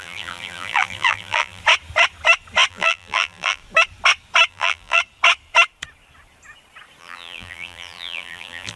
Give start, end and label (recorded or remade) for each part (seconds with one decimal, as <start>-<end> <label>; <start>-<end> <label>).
0.0-1.6 remade; 1.6-2.7 recorded; 2.7-3.6 remade; 3.6-4.5 recorded; 4.5-5.0 remade; 5.0-7.0 recorded; 7.0-8.8 remade